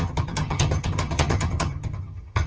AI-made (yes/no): yes